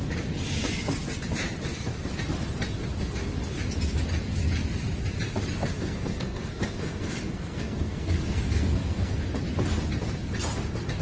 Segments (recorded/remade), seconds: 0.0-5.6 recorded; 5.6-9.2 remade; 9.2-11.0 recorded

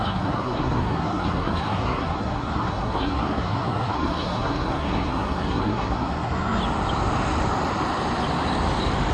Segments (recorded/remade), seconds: 0.0-6.6 remade; 6.6-9.1 recorded

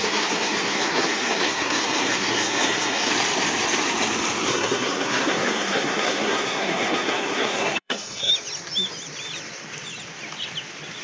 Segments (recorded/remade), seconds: 0.0-3.1 remade; 3.1-4.5 recorded; 4.5-8.3 remade; 8.3-11.0 recorded